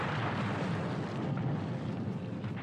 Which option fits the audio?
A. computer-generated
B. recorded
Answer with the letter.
B